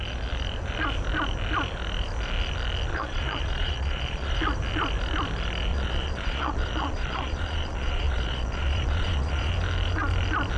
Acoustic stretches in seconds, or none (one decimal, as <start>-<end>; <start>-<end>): 0.0-2.9; 4.4-5.7; 9.5-10.6